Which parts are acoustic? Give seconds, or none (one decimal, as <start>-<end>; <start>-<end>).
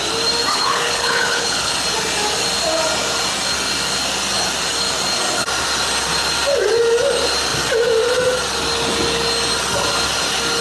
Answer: 0.0-0.5; 1.7-10.6